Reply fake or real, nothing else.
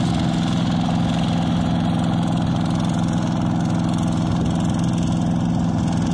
real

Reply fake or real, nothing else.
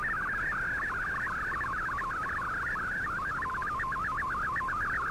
real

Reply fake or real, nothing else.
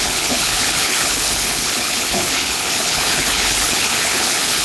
fake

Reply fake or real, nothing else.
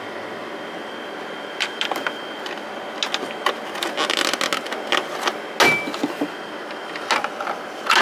real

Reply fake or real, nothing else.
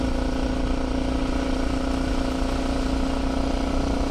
real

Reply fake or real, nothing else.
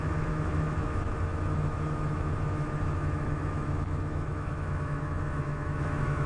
fake